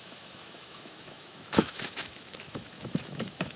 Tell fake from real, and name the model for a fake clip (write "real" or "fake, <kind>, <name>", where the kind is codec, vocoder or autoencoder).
fake, autoencoder, DAC-VAE